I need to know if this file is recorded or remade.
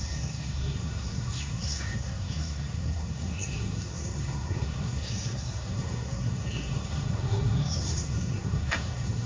remade